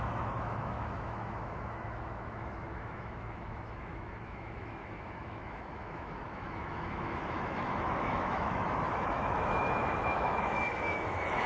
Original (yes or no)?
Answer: no